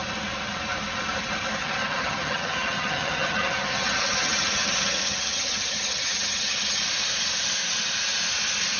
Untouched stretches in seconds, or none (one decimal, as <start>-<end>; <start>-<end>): 0.0-1.6; 6.8-8.8